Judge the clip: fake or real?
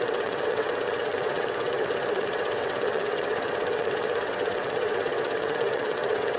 fake